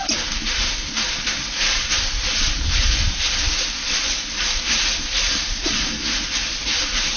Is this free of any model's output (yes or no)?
no